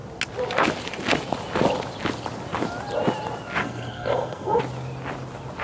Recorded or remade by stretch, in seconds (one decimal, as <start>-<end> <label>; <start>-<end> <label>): 0.0-3.6 recorded; 3.6-4.6 remade; 4.6-5.6 recorded